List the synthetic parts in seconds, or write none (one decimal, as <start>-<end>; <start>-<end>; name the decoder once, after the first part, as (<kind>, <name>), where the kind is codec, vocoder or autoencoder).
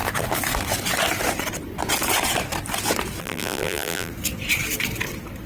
3.2-4.1 (vocoder, BigVGAN v2)